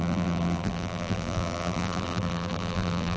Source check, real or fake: fake